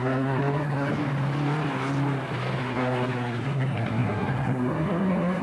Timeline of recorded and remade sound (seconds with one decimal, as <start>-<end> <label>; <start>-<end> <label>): 0.0-0.9 remade; 0.9-2.6 recorded; 2.6-5.4 remade